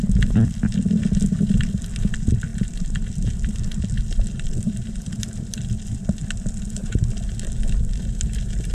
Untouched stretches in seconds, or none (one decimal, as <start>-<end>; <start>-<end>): 0.0-2.5; 5.2-6.8; 8.0-8.7